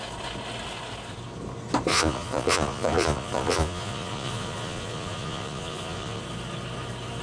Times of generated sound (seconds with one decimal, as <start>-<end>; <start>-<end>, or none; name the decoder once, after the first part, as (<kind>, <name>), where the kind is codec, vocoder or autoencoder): 1.9-6.2 (vocoder, Vocos)